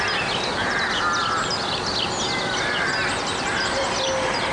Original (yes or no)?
yes